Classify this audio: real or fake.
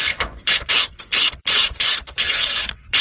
fake